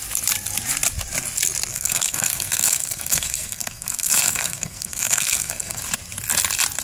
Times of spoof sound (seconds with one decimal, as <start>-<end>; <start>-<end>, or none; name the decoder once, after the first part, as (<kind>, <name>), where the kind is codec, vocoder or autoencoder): 1.7-5.8 (codec, SNAC)